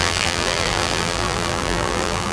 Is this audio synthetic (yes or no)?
yes